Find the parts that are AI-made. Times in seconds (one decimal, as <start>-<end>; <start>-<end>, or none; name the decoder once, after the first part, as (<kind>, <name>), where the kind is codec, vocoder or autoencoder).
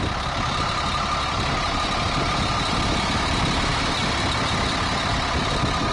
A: none